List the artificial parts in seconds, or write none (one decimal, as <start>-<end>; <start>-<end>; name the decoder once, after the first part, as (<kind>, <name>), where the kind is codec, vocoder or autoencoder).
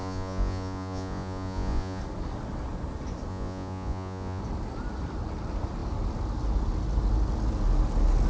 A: 0.0-2.0 (vocoder, Vocos); 3.3-4.4